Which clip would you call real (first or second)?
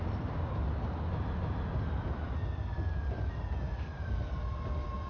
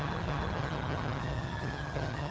first